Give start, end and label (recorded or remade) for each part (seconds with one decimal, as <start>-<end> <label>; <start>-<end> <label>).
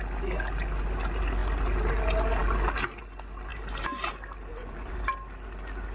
0.0-3.5 recorded; 3.5-4.1 remade; 4.1-4.5 recorded; 4.5-5.1 remade; 5.1-5.9 recorded